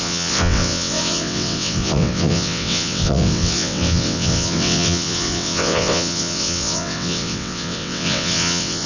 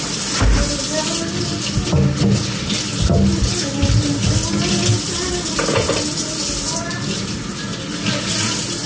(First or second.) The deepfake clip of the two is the first